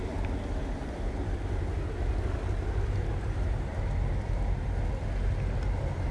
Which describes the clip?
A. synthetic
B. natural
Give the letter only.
B